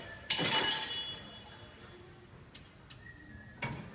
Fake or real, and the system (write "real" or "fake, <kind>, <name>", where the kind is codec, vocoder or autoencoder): real